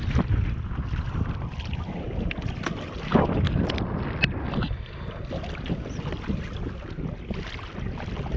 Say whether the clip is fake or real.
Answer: real